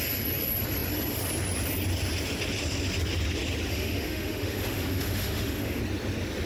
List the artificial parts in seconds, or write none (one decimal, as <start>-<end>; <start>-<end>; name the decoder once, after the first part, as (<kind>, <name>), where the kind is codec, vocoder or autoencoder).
3.7-5.8 (autoencoder, DAC-VAE)